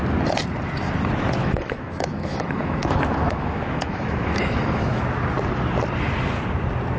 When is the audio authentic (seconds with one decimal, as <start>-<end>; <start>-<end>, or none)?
0.0-1.4; 5.0-7.0